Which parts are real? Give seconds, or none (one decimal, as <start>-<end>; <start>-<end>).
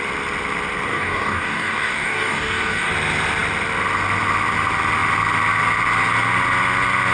0.0-0.9; 2.9-7.1